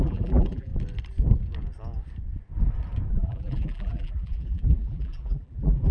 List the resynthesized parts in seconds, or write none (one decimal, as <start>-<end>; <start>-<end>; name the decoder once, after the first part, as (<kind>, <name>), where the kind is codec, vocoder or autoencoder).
0.0-0.7 (vocoder, BigVGAN v2); 3.1-5.9